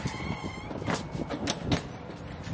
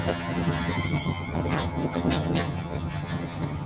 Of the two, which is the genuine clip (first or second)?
first